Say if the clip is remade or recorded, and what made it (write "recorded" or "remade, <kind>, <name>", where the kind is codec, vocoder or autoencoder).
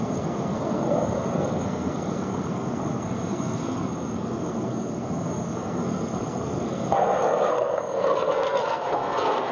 remade, codec, SNAC